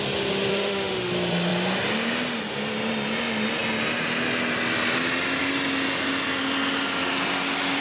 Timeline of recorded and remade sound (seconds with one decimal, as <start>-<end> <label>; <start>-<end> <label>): 0.0-0.5 recorded; 0.5-1.1 remade; 1.1-7.8 recorded